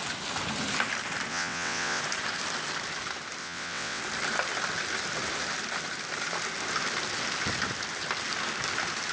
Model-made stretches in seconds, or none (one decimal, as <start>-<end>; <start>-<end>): 1.3-2.0; 3.4-4.0